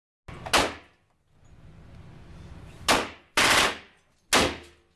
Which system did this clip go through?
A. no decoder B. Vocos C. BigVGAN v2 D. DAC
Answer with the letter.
A